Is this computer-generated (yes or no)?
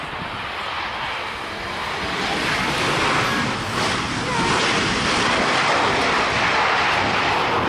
no